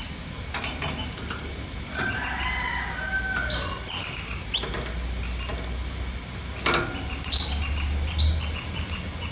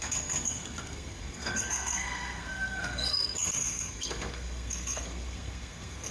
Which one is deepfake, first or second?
second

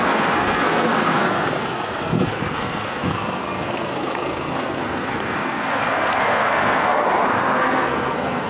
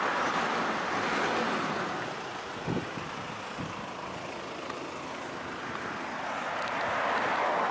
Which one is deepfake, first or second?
first